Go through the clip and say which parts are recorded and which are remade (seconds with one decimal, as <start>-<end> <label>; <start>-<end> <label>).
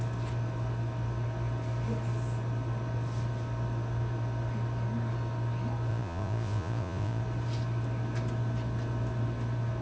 0.0-5.9 recorded; 5.9-7.2 remade; 7.2-9.8 recorded